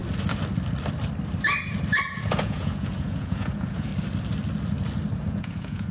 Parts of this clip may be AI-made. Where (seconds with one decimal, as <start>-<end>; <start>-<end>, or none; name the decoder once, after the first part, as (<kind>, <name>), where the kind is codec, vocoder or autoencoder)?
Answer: 2.2-3.9 (vocoder, Vocos); 5.2-5.9